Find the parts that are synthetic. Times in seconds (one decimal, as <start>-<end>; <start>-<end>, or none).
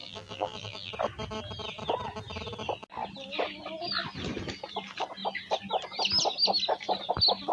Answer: 0.0-0.9